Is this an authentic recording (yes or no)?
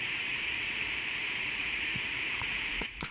no